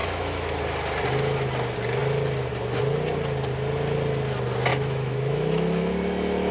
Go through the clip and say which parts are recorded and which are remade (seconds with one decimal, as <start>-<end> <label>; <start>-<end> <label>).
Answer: 0.0-0.6 remade; 0.6-4.7 recorded; 4.7-5.9 remade; 5.9-6.5 recorded